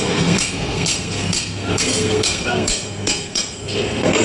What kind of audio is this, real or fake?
fake